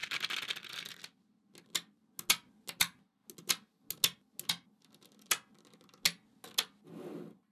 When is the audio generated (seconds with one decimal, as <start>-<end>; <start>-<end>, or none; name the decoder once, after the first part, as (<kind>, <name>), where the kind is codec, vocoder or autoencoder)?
none